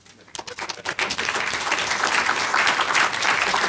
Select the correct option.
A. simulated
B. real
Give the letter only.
B